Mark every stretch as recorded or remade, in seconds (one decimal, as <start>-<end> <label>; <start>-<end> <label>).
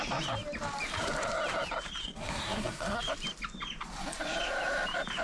0.0-2.0 recorded; 2.0-3.0 remade; 3.0-5.2 recorded